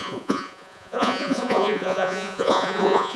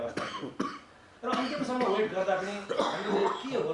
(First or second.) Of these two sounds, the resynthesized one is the first